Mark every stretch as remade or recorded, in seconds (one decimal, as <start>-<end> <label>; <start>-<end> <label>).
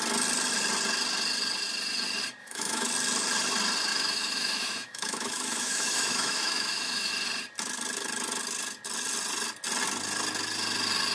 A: 0.0-2.4 recorded; 2.4-2.9 remade; 2.9-3.9 recorded; 3.9-7.1 remade; 7.1-11.1 recorded